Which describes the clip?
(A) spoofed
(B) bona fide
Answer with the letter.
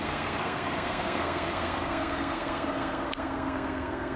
A